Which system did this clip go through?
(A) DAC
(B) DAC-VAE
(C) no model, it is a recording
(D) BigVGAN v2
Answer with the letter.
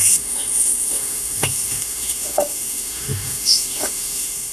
B